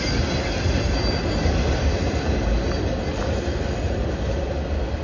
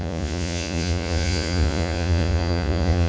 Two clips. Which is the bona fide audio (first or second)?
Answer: first